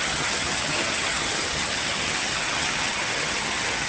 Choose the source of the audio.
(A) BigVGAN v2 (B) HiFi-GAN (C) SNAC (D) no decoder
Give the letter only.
B